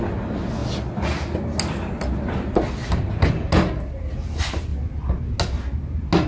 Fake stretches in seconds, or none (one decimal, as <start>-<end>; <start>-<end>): none